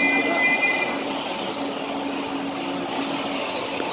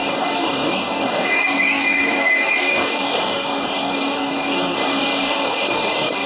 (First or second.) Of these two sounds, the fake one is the second